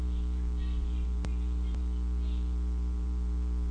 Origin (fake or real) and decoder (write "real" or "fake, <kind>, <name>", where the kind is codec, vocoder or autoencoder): fake, vocoder, BigVGAN v2